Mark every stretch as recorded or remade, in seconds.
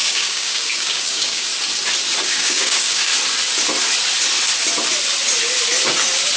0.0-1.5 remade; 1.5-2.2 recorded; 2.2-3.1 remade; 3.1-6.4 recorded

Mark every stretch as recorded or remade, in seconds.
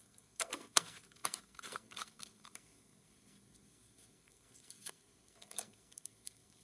0.0-6.6 remade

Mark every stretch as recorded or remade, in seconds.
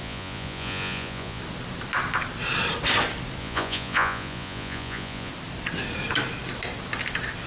0.0-1.4 remade; 1.4-3.4 recorded; 3.4-5.3 remade; 5.3-7.5 recorded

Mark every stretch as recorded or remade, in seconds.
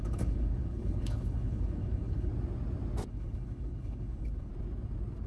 0.0-2.3 remade; 2.3-3.1 recorded; 3.1-4.5 remade; 4.5-5.3 recorded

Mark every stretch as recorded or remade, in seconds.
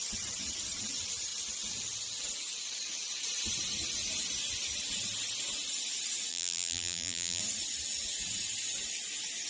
0.0-6.3 recorded; 6.3-7.4 remade; 7.4-9.5 recorded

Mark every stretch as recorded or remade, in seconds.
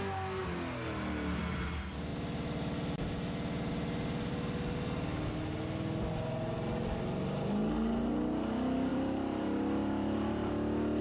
0.0-8.9 recorded; 8.9-10.5 remade; 10.5-11.0 recorded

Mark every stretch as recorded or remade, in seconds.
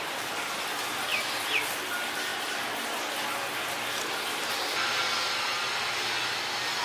0.0-6.8 recorded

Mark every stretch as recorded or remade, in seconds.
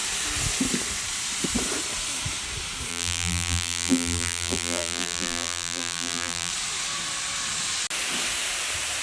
0.0-2.9 recorded; 2.9-6.5 remade; 6.5-9.0 recorded